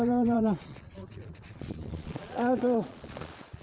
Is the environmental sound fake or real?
fake